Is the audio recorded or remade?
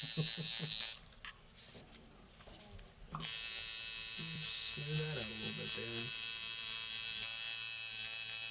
recorded